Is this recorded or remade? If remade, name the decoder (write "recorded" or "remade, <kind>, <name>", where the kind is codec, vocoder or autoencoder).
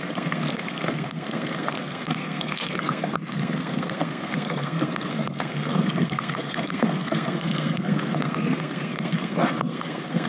remade, codec, SNAC